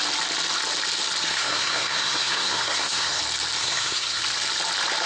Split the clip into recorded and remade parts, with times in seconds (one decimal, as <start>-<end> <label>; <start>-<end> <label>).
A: 0.0-1.3 recorded; 1.3-3.2 remade; 3.2-3.6 recorded; 3.6-4.2 remade; 4.2-5.1 recorded